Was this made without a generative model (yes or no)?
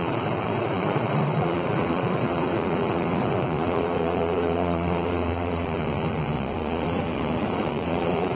no